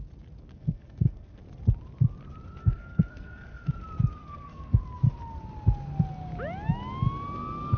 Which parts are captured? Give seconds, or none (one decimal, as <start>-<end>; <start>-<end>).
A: 0.0-0.5; 1.4-2.6; 3.7-4.2; 4.8-7.8